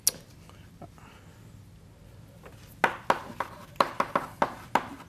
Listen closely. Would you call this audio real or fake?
real